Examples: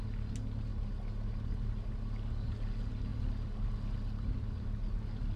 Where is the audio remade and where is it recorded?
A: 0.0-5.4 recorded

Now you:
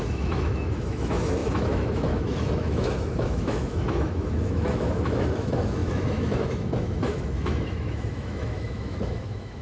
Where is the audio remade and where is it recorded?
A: 0.0-9.6 remade

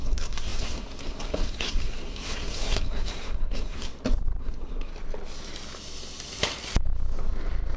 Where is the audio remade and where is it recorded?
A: 0.0-3.9 remade; 3.9-4.4 recorded; 4.4-4.9 remade; 4.9-7.8 recorded